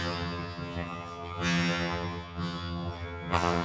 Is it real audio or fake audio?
fake